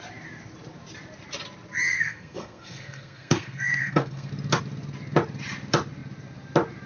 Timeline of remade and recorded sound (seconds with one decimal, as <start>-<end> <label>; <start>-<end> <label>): 0.0-1.9 recorded; 1.9-4.3 remade; 4.3-6.9 recorded